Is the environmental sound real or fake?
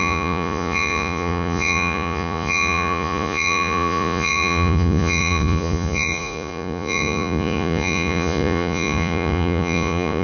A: fake